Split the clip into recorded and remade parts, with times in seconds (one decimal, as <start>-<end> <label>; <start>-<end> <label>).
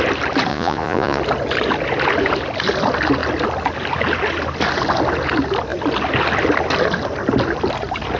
0.0-0.5 recorded; 0.5-1.2 remade; 1.2-8.2 recorded